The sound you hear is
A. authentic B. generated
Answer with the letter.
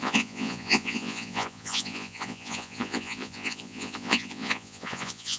B